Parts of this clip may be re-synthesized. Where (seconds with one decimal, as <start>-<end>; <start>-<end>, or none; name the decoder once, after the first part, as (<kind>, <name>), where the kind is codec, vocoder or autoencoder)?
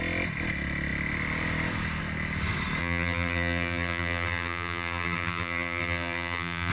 2.8-6.7 (vocoder, BigVGAN v2)